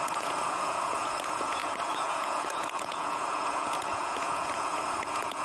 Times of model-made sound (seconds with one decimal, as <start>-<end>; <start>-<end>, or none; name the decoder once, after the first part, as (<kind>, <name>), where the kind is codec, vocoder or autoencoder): 0.0-5.4 (vocoder, Vocos)